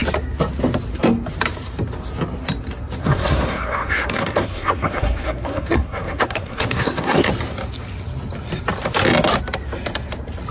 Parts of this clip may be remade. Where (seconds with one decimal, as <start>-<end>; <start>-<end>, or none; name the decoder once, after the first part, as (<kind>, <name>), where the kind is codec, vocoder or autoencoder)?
3.0-7.3 (codec, SNAC)